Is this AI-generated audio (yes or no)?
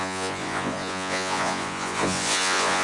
yes